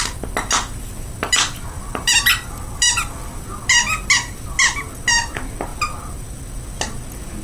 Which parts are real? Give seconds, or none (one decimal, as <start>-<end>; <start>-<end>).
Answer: 0.0-7.4